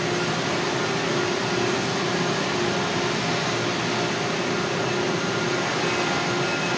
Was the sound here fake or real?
real